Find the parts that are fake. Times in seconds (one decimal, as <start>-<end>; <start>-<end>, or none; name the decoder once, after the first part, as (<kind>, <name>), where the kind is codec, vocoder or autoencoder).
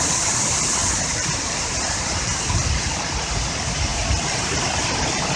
0.8-2.4 (vocoder, BigVGAN v2); 3.9-4.6